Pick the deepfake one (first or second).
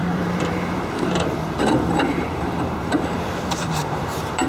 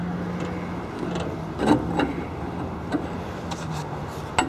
first